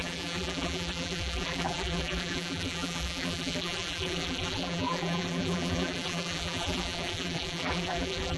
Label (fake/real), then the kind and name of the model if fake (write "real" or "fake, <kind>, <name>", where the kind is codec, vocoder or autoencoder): fake, vocoder, BigVGAN v2